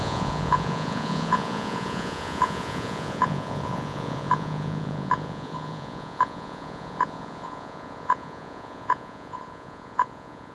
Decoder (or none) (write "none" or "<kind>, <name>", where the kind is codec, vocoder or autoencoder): vocoder, Vocos